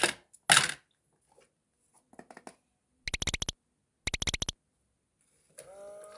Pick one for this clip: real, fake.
real